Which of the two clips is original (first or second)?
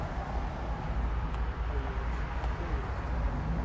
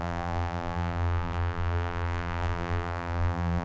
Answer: first